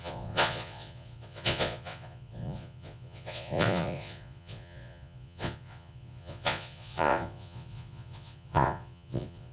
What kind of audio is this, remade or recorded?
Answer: remade